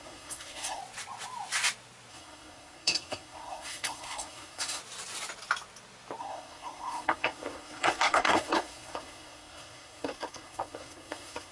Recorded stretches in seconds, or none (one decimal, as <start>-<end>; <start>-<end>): 0.8-2.1; 4.8-6.2